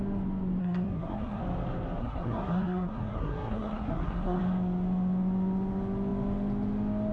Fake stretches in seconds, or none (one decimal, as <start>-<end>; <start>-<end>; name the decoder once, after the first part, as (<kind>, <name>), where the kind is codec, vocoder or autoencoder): 0.6-1.4 (codec, SNAC); 2.0-4.4